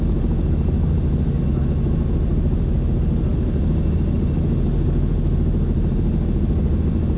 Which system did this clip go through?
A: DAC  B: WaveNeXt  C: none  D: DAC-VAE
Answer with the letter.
C